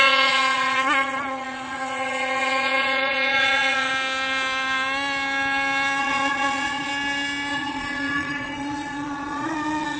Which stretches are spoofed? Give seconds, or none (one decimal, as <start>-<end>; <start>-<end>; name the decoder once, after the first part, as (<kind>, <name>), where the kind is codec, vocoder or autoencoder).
0.0-3.9 (vocoder, Vocos); 6.0-6.9; 7.5-10.0